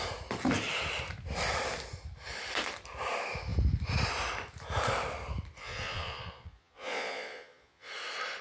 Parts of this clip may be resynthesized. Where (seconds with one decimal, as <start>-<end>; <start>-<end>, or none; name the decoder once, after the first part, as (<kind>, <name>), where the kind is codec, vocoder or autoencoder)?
5.6-7.9 (vocoder, Vocos)